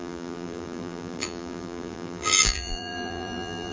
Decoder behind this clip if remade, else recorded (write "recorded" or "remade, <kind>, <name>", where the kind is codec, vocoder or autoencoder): remade, vocoder, BigVGAN v2